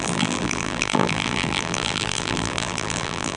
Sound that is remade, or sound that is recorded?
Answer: remade